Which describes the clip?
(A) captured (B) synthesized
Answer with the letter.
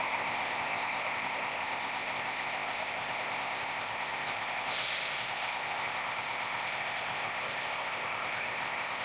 B